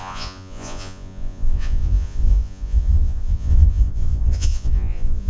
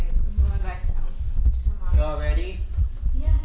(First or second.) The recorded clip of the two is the second